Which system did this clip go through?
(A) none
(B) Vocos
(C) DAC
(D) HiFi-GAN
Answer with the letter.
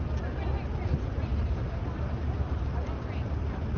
A